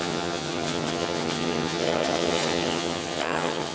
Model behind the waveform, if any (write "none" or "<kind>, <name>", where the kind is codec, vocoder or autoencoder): vocoder, HiFi-GAN